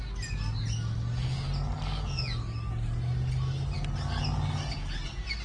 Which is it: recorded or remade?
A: recorded